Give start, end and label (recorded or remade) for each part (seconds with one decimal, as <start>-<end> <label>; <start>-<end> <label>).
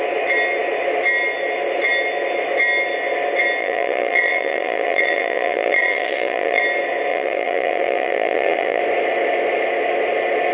0.0-3.6 recorded; 3.6-6.6 remade; 6.6-7.1 recorded; 7.1-8.8 remade; 8.8-10.5 recorded